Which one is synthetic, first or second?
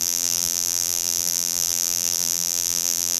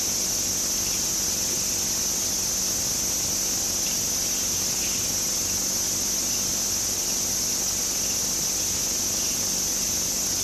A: first